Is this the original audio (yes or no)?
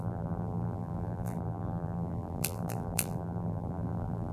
no